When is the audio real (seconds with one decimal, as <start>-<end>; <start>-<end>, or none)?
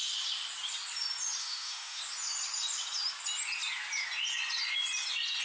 0.0-1.4; 2.0-5.4